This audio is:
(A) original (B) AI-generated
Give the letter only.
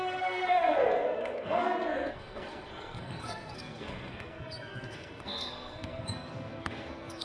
B